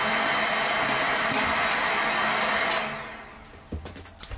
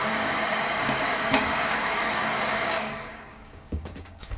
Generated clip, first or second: second